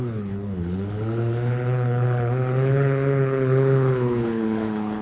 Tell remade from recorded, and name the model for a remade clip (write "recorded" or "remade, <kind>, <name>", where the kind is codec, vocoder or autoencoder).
remade, codec, HILCodec